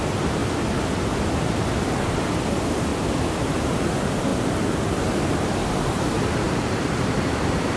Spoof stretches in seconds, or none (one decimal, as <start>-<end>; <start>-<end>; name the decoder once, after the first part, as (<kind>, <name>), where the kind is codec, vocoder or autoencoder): 0.0-0.4 (vocoder, BigVGAN v2); 2.5-4.3; 4.9-7.8